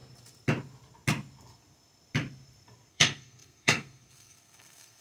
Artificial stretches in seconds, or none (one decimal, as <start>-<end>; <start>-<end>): 2.9-5.0